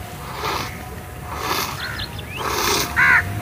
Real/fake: fake